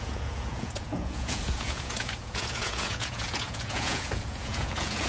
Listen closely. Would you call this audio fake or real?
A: fake